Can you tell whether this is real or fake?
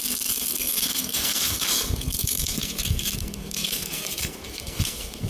fake